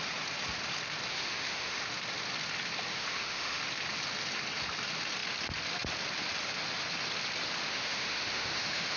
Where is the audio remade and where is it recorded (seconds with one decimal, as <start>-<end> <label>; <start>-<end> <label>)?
0.0-1.1 recorded; 1.1-1.8 remade; 1.8-2.9 recorded; 2.9-3.6 remade; 3.6-7.7 recorded; 7.7-9.0 remade